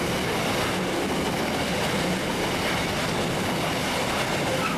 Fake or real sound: real